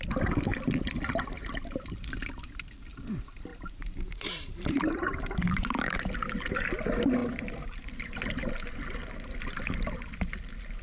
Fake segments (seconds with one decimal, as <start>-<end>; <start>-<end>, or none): 1.4-2.0; 3.5-6.3; 7.2-8.2